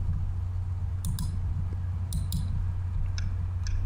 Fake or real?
real